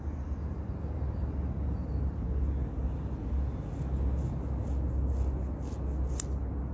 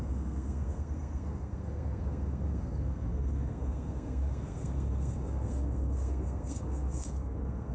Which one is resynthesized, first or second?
second